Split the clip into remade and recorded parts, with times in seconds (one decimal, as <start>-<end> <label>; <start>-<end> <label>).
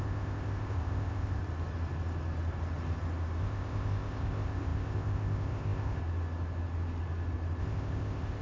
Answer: 0.0-1.4 remade; 1.4-3.4 recorded; 3.4-6.0 remade; 6.0-7.6 recorded; 7.6-8.4 remade